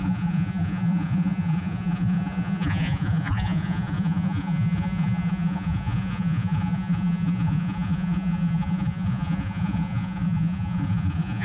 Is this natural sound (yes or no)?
no